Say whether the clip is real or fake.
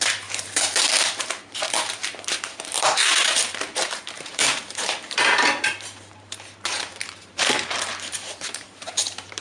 fake